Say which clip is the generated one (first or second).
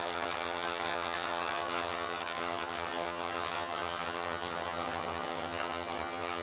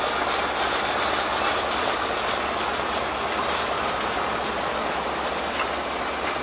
first